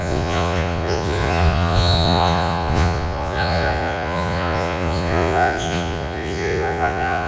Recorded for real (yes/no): no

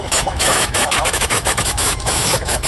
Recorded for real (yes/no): no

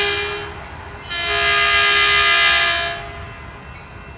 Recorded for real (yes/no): yes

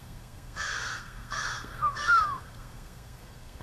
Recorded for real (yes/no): no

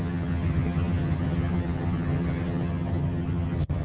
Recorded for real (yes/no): no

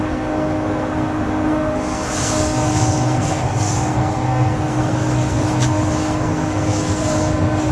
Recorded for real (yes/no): no